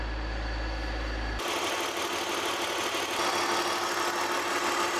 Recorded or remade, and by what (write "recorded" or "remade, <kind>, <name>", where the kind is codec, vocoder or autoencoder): recorded